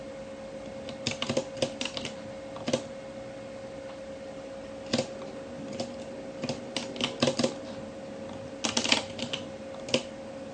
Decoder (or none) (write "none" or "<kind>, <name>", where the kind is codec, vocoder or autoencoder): none